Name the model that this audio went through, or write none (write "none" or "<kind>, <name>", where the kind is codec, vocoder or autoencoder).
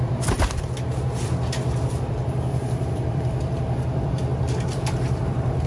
vocoder, BigVGAN v2